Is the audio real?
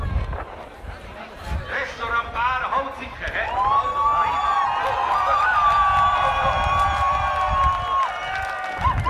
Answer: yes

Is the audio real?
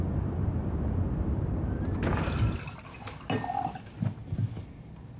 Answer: yes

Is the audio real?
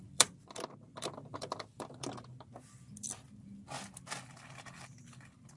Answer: no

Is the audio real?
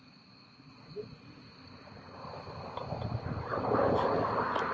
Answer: yes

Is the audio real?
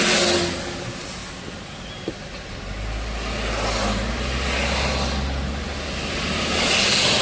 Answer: yes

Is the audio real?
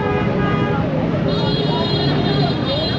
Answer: yes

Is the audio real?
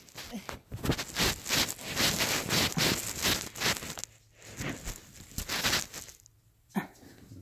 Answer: yes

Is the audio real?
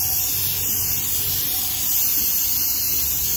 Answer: yes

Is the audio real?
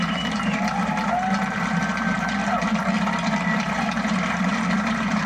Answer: no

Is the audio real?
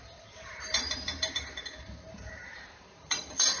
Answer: no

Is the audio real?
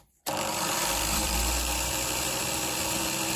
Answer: no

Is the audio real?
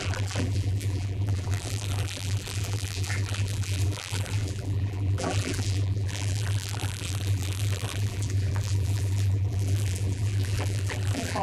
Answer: no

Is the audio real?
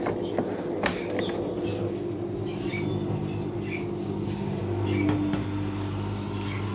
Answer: yes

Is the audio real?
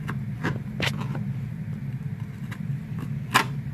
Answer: yes